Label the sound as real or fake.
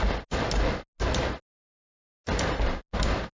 real